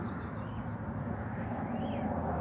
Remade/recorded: recorded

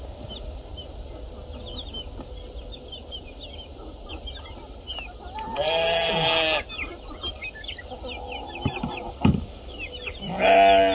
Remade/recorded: recorded